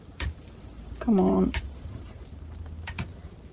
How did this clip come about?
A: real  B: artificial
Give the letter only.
B